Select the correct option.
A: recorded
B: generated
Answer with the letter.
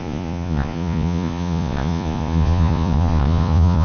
B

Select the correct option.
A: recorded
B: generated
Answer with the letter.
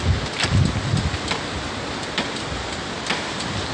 A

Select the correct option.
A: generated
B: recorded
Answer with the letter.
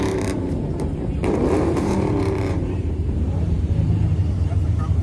A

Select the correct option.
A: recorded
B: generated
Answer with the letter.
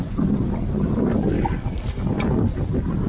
A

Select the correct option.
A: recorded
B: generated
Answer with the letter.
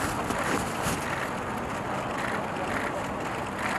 A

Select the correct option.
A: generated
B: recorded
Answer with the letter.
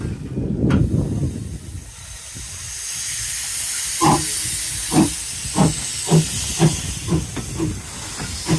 B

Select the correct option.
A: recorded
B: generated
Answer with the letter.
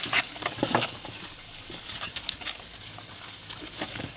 B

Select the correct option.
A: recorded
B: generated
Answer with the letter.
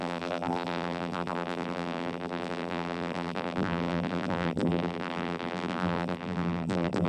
B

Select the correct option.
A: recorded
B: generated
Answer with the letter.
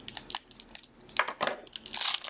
A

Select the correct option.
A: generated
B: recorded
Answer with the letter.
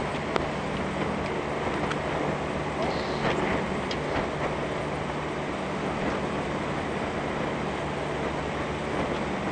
B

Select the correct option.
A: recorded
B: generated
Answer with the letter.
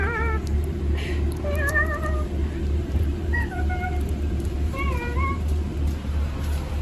B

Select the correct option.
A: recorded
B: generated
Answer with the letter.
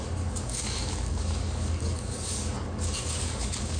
B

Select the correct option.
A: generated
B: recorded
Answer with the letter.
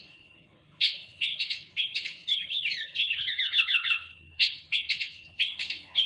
A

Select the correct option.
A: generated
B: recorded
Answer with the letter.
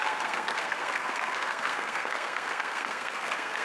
A